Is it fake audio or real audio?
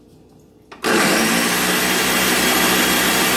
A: real